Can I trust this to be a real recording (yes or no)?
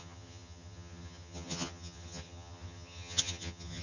no